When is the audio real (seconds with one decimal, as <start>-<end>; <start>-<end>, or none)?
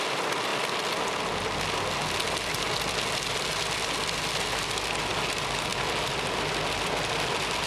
0.0-7.7